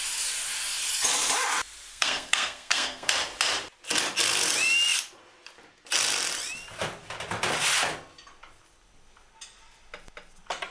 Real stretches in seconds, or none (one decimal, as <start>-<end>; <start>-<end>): 0.0-1.9; 3.1-10.7